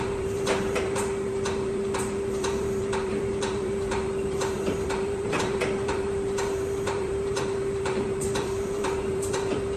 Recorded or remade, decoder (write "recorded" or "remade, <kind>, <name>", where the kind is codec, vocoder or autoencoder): remade, vocoder, BigVGAN v2